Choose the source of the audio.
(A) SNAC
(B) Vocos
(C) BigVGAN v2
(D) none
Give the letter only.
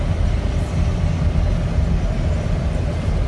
D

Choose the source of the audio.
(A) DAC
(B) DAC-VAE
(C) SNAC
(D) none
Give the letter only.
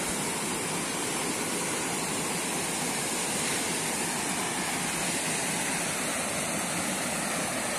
D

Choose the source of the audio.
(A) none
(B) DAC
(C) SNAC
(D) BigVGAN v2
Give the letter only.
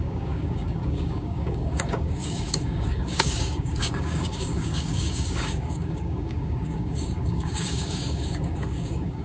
B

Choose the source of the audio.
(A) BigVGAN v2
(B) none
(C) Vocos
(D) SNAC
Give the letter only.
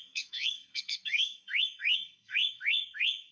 D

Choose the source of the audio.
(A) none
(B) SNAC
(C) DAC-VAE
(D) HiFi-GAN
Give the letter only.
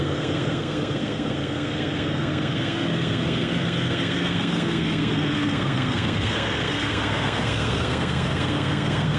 B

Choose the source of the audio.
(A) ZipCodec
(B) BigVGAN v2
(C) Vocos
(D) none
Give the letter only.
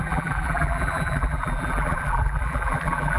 B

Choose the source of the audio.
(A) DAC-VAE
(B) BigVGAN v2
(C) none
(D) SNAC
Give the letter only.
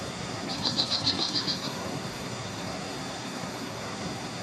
D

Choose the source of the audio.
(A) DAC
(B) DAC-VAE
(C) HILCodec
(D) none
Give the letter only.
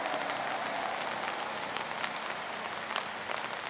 D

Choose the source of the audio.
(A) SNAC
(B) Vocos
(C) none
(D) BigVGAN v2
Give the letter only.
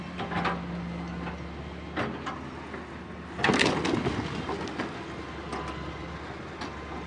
C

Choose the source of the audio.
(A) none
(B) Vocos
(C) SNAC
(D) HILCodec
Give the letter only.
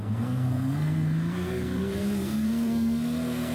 C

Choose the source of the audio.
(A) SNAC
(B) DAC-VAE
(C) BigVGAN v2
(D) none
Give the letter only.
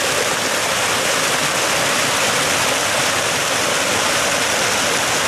D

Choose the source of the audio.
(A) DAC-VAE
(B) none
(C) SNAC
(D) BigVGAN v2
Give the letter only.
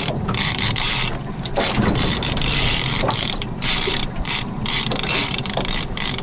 D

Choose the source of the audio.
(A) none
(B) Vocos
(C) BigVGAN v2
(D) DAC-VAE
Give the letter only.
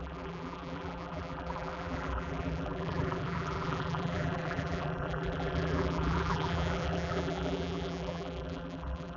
C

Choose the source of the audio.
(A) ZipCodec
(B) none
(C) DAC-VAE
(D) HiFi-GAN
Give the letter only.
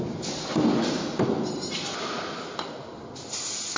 B